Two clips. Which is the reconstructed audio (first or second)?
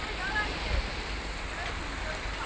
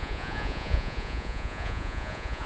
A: second